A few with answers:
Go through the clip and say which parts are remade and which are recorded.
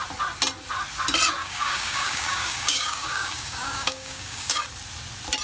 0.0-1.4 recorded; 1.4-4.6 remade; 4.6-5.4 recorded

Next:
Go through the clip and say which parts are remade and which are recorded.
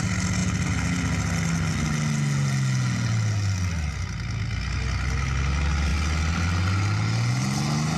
0.0-8.0 recorded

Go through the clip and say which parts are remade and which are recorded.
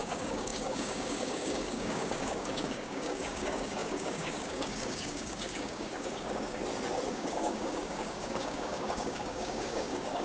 0.0-6.6 remade; 6.6-7.1 recorded; 7.1-10.2 remade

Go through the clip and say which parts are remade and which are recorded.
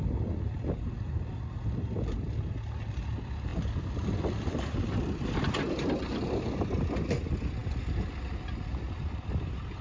0.0-9.8 recorded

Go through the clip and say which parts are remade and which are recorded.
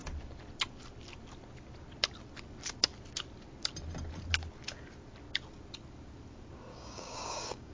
0.0-6.7 recorded; 6.7-7.7 remade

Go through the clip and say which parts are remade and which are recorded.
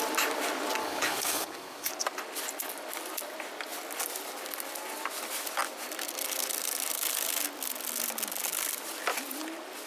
0.0-0.8 recorded; 0.8-1.9 remade; 1.9-9.9 recorded